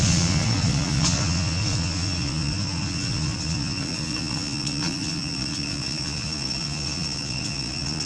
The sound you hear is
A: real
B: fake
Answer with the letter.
B